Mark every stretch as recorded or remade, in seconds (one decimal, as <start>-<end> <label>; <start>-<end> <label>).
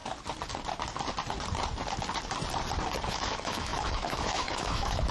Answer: 0.0-3.1 recorded; 3.1-5.1 remade